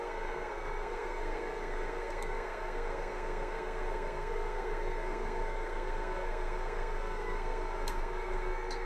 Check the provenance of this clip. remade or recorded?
remade